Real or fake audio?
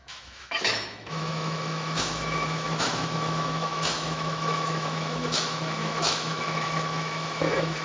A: fake